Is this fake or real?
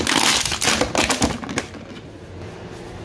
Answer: real